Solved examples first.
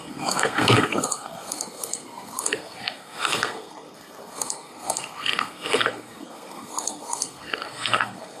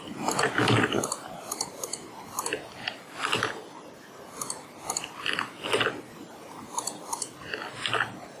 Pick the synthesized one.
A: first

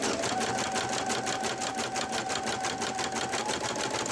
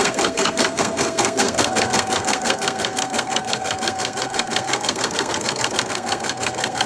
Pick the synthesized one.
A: second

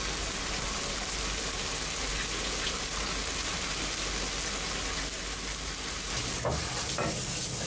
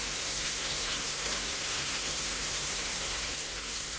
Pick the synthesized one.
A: second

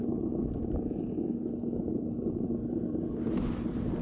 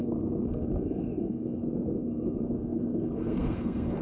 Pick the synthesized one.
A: second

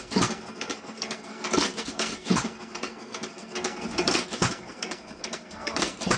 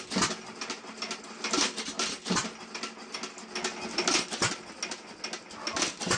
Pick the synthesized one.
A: first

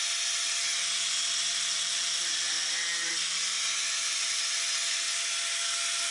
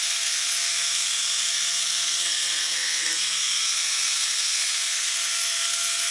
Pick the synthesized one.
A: second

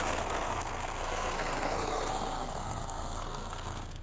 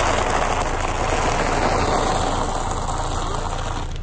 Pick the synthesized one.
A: first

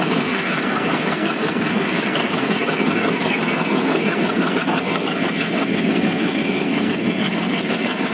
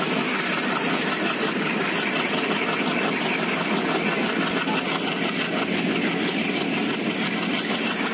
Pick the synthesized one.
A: first